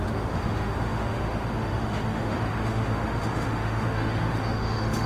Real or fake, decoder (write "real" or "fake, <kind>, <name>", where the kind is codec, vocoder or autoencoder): fake, autoencoder, DAC-VAE